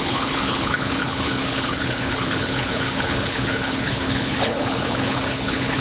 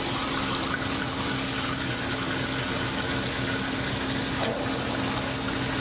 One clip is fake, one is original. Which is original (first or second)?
second